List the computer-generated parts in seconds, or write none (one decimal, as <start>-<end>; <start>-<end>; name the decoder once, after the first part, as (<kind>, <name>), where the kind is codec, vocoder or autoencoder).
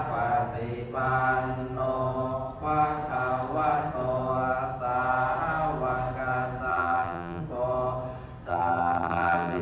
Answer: 6.7-7.4 (vocoder, BigVGAN v2); 8.5-9.6